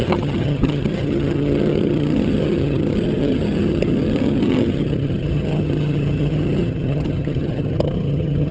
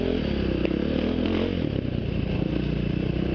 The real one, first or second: second